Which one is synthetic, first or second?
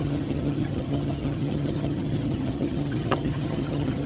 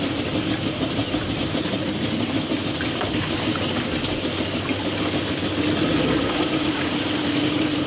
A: first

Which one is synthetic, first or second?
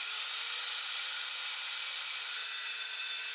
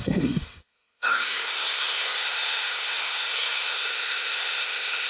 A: second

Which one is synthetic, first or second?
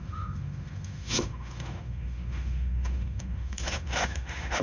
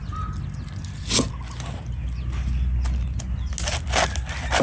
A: first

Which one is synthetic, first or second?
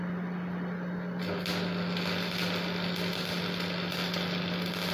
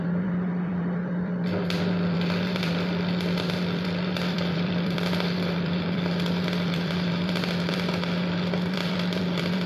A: second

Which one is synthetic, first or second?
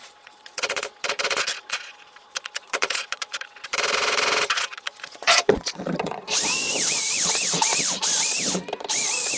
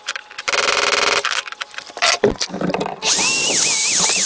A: first